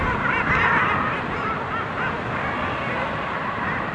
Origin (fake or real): real